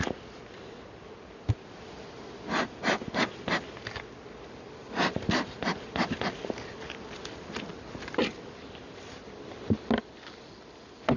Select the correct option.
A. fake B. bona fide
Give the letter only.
B